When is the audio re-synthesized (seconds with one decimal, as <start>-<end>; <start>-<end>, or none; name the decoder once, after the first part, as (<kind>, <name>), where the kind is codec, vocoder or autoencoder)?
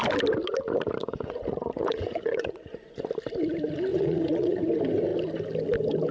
1.0-3.0 (vocoder, Vocos); 3.9-4.6